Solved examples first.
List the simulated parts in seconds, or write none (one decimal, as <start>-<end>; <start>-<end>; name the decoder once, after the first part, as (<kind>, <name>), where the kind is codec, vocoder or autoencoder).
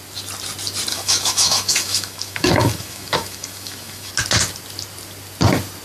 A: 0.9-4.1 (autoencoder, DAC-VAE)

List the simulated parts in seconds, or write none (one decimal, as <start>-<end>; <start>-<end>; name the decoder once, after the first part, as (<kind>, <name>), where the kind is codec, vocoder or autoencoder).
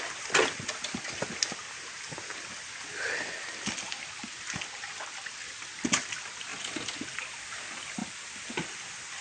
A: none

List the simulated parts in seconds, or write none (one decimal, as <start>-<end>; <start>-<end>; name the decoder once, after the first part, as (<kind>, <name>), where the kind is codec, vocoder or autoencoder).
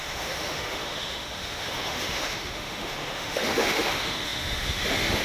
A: 0.0-5.2 (autoencoder, DAC-VAE)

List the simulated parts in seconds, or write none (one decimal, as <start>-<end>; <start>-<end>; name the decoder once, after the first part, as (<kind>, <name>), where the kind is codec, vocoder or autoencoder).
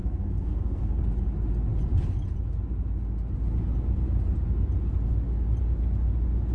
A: 0.0-1.0 (codec, SNAC)